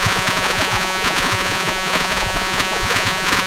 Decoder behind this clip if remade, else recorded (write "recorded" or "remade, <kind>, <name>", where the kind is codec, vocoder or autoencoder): remade, vocoder, Vocos